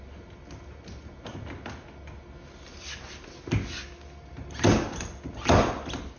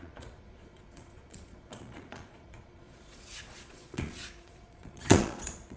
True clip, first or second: first